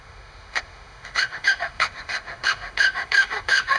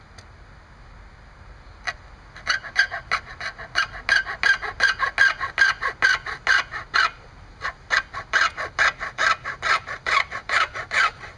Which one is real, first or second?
second